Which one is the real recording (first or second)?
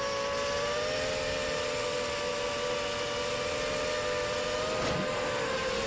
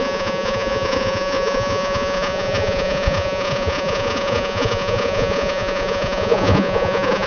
first